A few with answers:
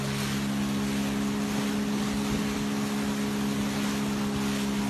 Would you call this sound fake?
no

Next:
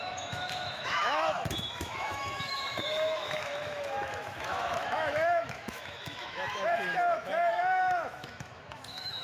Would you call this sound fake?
yes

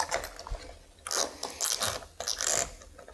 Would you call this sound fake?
no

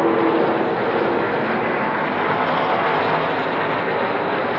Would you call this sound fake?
no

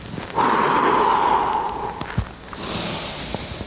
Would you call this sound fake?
no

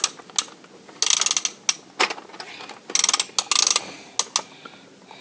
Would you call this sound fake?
no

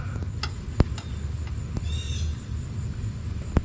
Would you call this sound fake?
no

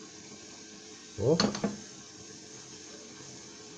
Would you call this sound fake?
no